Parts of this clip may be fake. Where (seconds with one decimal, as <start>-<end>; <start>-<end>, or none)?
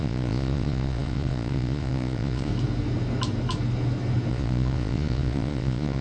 0.0-2.5; 4.3-6.0